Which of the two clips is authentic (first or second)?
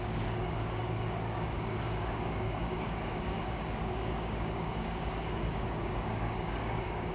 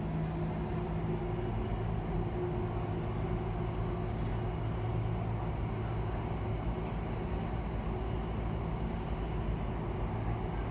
second